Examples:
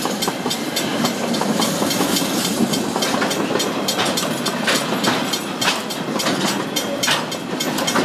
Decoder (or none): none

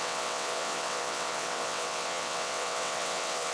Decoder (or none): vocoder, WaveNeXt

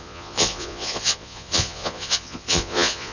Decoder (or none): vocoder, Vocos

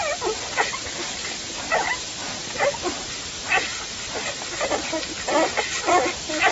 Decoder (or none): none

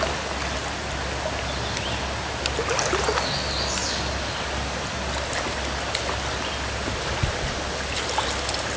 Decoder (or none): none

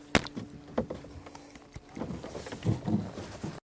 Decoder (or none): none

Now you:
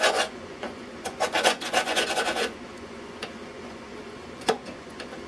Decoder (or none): vocoder, Vocos